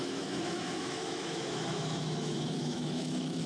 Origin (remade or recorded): remade